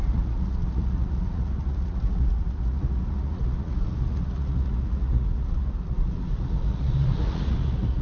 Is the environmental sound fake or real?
fake